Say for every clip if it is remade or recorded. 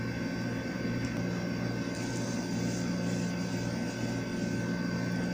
recorded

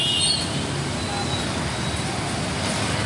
recorded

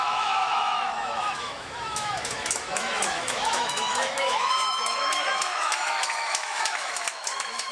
remade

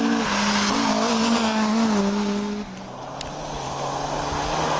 recorded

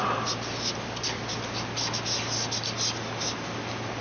recorded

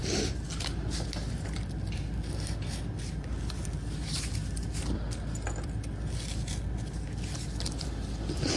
recorded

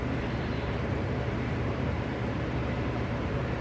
remade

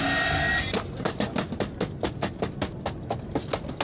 recorded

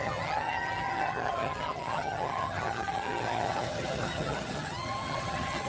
remade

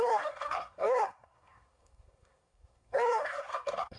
remade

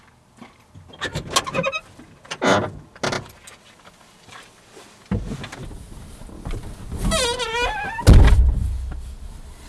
recorded